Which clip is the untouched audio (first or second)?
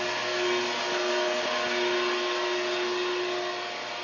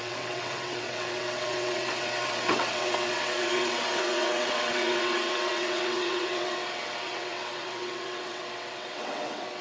first